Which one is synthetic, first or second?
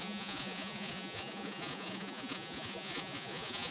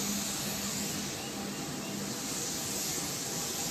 first